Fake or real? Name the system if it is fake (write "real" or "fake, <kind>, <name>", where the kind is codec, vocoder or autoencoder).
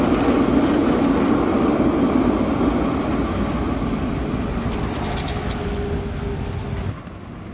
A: real